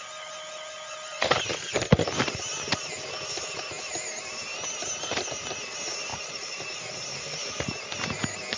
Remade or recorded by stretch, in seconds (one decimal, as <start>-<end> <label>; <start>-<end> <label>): 0.0-6.1 recorded; 6.1-7.0 remade; 7.0-8.6 recorded